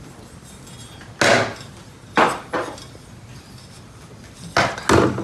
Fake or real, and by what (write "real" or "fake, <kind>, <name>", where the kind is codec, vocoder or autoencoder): real